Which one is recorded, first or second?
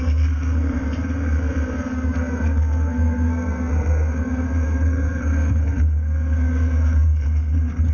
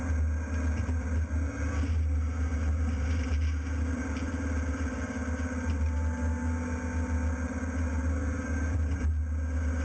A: second